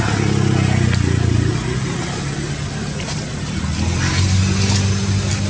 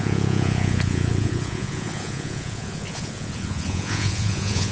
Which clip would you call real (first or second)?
first